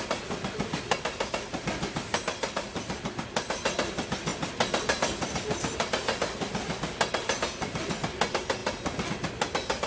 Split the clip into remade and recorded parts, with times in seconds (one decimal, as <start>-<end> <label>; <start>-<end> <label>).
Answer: 0.0-9.9 recorded